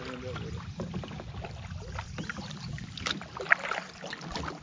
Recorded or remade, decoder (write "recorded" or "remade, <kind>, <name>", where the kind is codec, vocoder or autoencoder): recorded